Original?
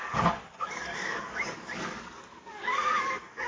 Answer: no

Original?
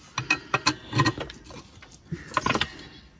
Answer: yes